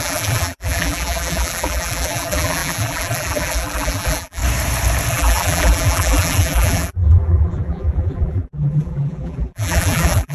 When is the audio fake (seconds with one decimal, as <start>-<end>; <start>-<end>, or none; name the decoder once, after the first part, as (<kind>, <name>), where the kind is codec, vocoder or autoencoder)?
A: 0.0-4.4 (vocoder, BigVGAN v2); 5.1-10.3